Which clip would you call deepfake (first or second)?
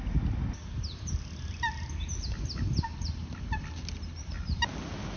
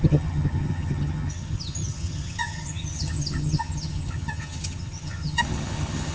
second